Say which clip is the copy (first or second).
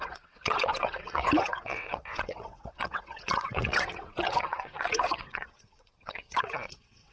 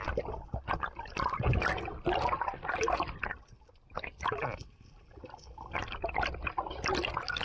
first